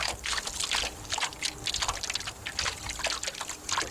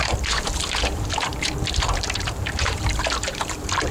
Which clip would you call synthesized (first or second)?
second